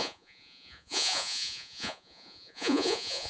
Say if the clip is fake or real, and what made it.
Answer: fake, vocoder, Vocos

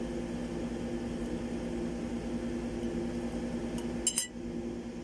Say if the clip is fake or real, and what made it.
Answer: real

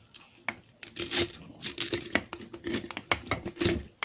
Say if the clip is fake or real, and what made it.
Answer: real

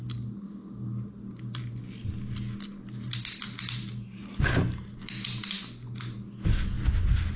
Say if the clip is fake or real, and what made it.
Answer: real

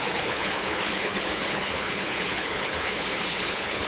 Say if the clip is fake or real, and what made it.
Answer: fake, codec, HILCodec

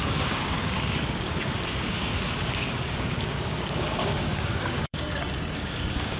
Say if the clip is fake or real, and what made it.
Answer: fake, codec, DAC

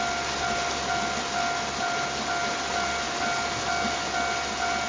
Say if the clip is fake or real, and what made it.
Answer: real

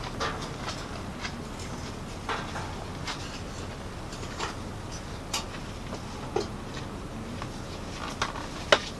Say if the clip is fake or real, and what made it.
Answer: real